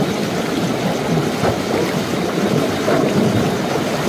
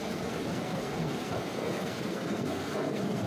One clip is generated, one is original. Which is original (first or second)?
first